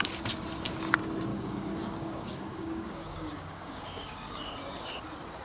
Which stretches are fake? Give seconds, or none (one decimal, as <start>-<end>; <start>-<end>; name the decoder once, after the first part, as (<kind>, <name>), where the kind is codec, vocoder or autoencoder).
1.3-4.5 (codec, DAC)